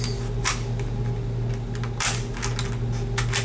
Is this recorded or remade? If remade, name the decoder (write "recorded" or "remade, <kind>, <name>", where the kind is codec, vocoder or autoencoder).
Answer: recorded